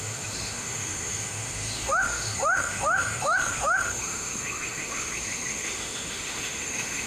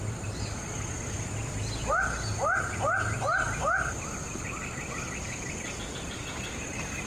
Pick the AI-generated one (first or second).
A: first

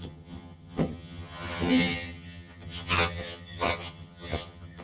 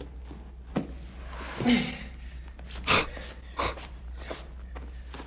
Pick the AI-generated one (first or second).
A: first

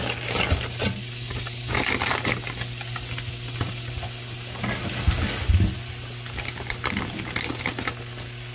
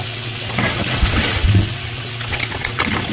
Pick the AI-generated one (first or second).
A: second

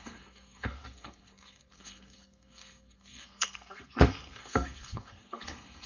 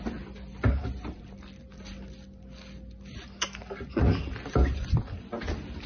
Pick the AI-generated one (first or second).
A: first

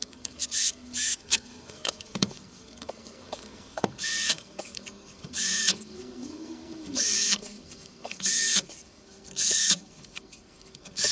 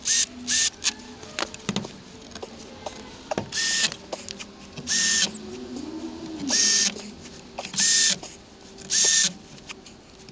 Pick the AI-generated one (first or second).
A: first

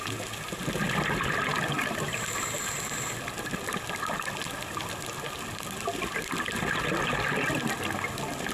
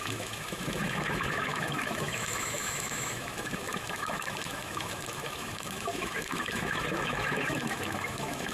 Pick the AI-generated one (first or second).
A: second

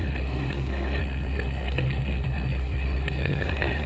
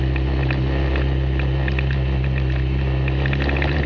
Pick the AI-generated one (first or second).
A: first